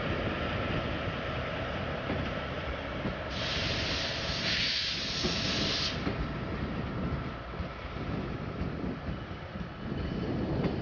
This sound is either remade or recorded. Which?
recorded